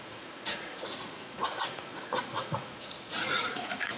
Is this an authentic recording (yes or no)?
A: no